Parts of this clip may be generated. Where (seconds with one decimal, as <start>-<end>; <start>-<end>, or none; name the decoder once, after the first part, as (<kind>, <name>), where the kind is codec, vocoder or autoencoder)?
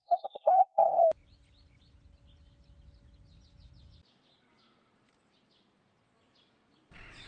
0.0-1.0 (codec, SNAC)